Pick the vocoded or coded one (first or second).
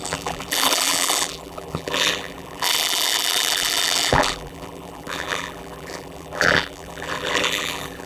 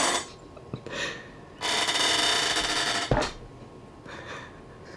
first